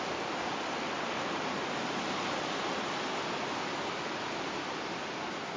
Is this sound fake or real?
real